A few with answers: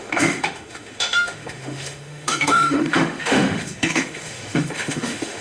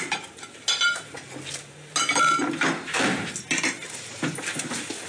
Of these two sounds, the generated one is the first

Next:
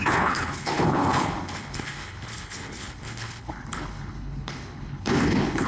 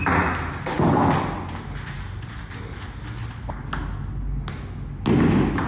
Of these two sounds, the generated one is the first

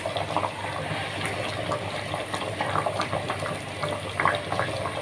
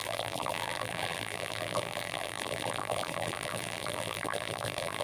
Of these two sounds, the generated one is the second